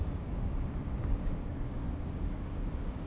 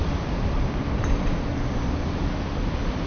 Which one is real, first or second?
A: second